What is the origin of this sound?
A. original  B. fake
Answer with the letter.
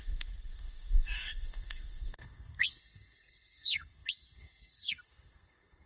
B